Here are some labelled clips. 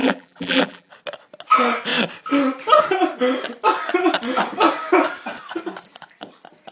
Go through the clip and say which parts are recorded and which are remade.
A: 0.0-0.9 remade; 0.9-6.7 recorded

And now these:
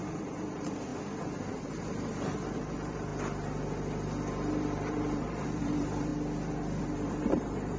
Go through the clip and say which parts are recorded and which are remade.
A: 0.0-0.9 remade; 0.9-1.5 recorded; 1.5-3.1 remade; 3.1-4.5 recorded; 4.5-6.1 remade; 6.1-6.8 recorded; 6.8-7.8 remade

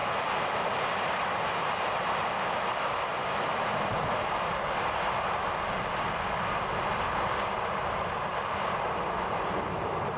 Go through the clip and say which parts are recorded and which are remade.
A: 0.0-1.9 recorded; 1.9-3.1 remade; 3.1-7.8 recorded; 7.8-10.2 remade

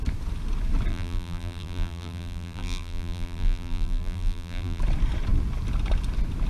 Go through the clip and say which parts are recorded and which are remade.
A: 0.0-0.9 recorded; 0.9-4.8 remade; 4.8-6.5 recorded

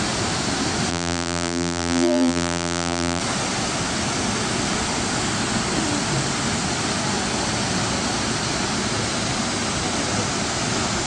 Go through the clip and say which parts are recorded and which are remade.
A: 0.0-0.9 recorded; 0.9-3.2 remade; 3.2-11.1 recorded

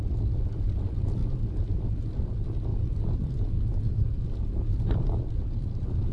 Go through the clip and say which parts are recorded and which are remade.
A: 0.0-2.7 recorded; 2.7-3.3 remade; 3.3-3.7 recorded; 3.7-5.2 remade; 5.2-6.1 recorded

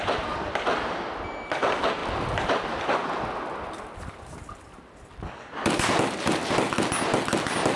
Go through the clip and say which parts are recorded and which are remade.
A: 0.0-7.8 recorded